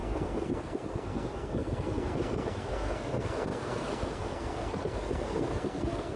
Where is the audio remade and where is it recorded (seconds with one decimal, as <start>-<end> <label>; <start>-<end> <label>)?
0.0-6.2 remade